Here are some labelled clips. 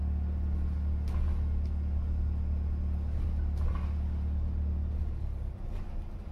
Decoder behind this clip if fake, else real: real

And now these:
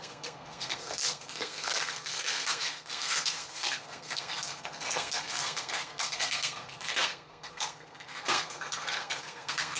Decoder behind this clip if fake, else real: fake, codec, SNAC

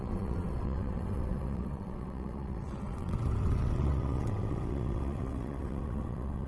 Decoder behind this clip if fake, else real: fake, vocoder, WaveNeXt